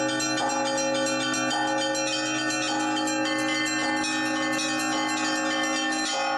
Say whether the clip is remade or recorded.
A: recorded